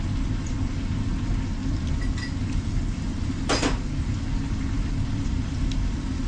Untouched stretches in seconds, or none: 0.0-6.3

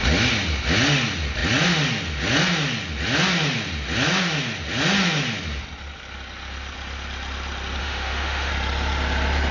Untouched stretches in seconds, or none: 0.0-7.8; 8.5-9.5

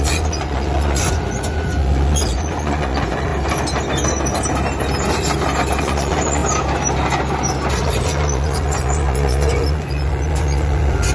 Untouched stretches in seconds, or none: 3.3-5.8; 6.4-7.7

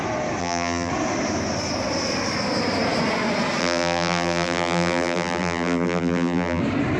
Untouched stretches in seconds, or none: 0.0-0.4; 0.9-3.6; 6.6-7.0